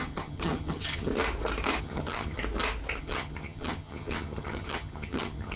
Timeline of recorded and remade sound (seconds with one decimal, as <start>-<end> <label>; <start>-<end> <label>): 0.0-1.1 remade; 1.1-1.8 recorded; 1.8-2.4 remade; 2.4-3.0 recorded; 3.0-5.6 remade